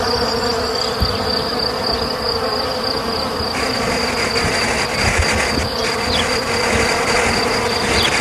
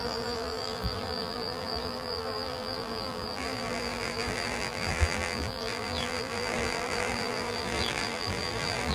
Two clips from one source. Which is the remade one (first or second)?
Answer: second